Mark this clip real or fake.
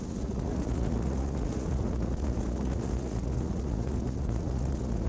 fake